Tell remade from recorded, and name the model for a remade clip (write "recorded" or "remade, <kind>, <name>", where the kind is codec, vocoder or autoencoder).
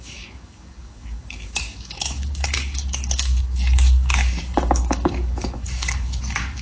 remade, codec, DAC